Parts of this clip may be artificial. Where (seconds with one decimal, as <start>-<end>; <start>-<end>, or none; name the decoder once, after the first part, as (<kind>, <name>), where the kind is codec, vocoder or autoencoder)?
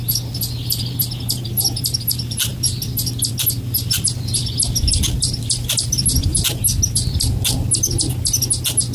none